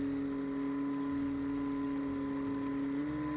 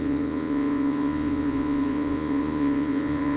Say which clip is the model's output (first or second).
second